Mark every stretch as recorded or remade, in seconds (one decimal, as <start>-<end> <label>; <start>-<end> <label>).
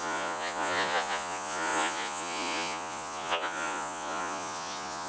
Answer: 0.0-5.1 remade